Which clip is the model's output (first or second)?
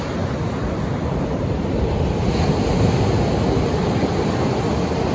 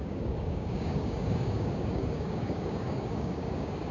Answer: second